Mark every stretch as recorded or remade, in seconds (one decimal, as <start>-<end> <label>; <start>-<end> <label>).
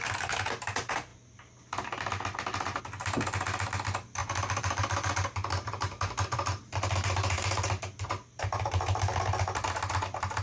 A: 0.0-1.1 recorded; 1.1-2.8 remade; 2.8-4.2 recorded; 4.2-9.2 remade; 9.2-10.4 recorded